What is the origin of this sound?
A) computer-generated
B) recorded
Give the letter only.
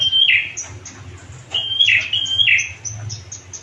B